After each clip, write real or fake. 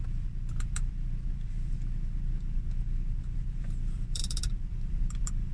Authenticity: fake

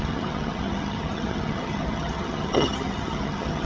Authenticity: fake